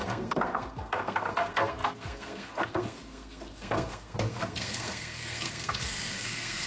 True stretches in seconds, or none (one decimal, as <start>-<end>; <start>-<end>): none